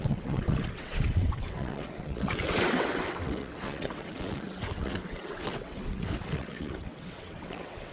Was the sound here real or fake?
fake